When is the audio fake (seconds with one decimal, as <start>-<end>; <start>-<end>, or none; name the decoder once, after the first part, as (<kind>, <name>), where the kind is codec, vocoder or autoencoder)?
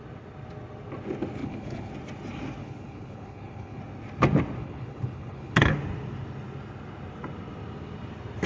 1.4-1.9 (codec, HILCodec); 2.6-3.8; 4.6-5.7